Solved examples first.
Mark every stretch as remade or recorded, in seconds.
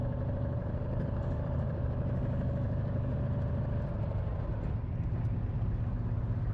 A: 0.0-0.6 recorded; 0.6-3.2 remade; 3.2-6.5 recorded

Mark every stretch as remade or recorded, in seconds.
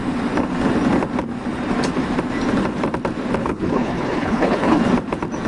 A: 0.0-3.4 recorded; 3.4-4.8 remade; 4.8-5.5 recorded